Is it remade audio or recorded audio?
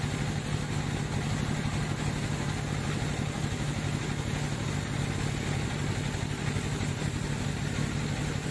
recorded